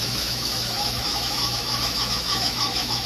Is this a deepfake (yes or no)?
yes